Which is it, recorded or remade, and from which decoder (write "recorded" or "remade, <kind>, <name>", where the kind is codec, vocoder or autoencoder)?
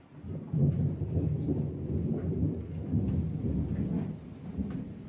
recorded